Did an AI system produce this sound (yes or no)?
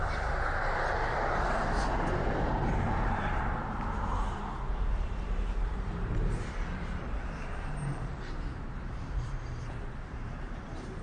yes